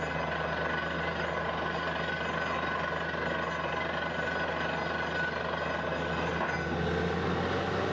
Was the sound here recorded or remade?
recorded